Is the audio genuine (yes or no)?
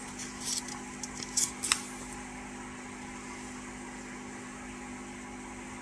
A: yes